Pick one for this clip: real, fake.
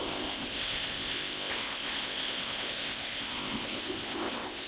fake